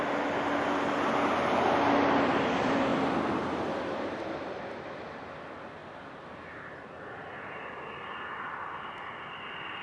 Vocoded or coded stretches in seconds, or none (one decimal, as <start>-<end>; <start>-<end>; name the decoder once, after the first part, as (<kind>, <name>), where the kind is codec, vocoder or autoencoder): none

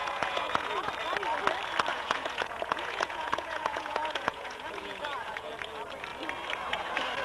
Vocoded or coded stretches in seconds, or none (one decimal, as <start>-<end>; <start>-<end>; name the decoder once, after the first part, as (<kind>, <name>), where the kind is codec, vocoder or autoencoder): 0.0-0.9 (vocoder, Vocos); 1.9-5.5

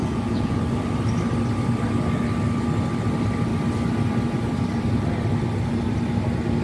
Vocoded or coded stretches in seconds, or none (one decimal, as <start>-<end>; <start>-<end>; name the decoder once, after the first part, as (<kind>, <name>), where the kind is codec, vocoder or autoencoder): 0.0-0.6 (vocoder, Vocos)